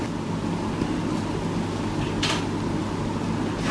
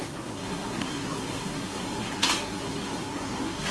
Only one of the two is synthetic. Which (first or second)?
second